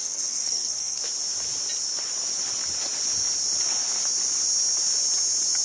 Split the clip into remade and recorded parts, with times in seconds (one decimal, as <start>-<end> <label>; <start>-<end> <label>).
0.0-1.0 remade; 1.0-5.6 recorded